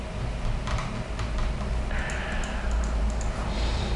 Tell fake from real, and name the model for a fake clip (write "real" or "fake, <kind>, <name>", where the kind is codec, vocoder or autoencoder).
real